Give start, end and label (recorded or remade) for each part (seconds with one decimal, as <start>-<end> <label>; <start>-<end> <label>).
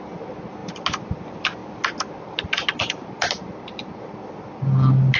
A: 0.0-3.4 recorded; 3.4-4.1 remade; 4.1-5.2 recorded